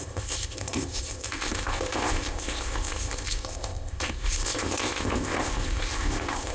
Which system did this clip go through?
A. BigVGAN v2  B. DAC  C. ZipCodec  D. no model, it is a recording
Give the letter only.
C